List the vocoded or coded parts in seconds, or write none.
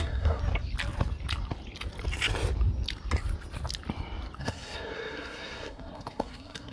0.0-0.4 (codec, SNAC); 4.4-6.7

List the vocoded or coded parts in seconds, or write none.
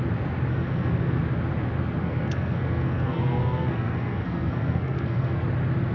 0.5-1.2 (codec, SNAC); 2.0-5.4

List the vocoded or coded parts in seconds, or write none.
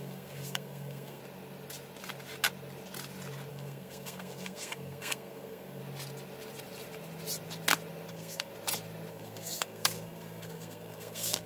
0.0-1.2 (codec, SNAC); 3.5-5.8; 8.1-8.5; 9.1-11.5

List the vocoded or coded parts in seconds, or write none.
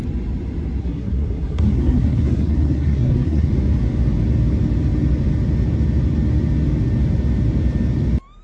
0.8-3.5 (codec, SNAC)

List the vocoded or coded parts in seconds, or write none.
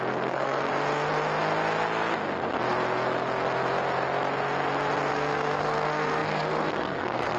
0.0-0.7 (codec, SNAC); 5.1-7.4